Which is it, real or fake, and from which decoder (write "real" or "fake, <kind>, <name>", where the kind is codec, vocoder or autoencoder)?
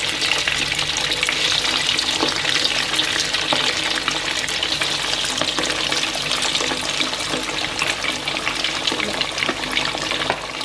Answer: real